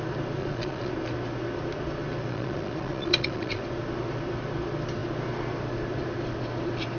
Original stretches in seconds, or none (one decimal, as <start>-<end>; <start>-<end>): 0.0-0.4; 0.9-2.3; 3.6-7.0